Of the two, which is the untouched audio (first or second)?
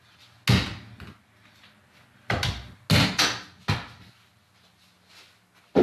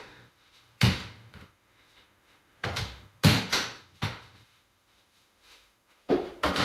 first